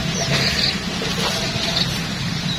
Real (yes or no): yes